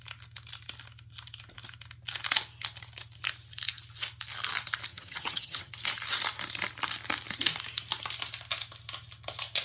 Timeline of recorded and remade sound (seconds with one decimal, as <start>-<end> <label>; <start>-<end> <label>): 0.0-4.9 recorded; 4.9-5.7 remade; 5.7-9.6 recorded